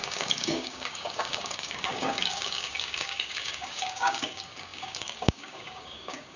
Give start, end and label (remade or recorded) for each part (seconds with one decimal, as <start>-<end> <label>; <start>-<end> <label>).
0.0-6.4 remade